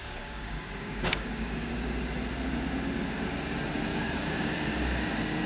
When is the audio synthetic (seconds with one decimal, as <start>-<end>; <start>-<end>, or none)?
0.0-1.7; 3.9-4.5